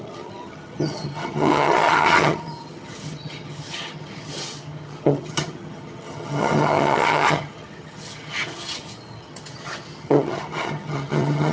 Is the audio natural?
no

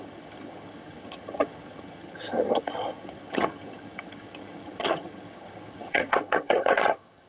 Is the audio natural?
no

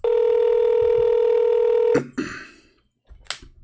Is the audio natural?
yes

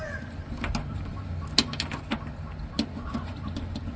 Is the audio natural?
yes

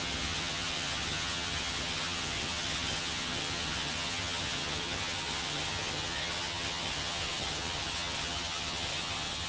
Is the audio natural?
no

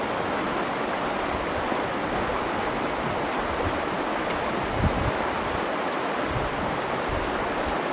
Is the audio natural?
yes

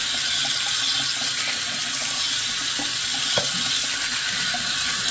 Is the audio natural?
yes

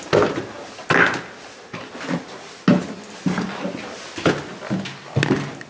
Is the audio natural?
yes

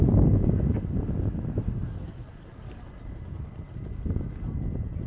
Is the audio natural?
yes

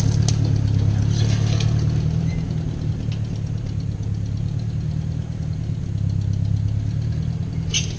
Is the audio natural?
yes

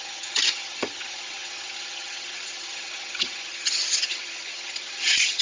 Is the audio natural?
no